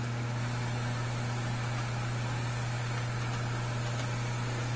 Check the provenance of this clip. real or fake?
real